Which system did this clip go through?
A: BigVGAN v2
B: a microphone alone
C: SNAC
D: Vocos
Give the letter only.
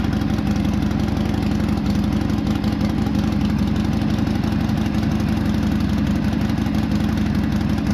B